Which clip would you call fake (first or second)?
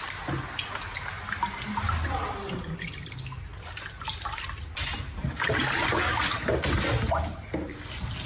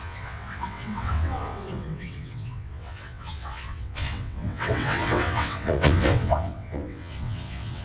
second